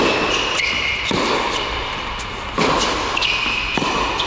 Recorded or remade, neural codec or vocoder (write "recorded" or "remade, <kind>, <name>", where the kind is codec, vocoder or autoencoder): recorded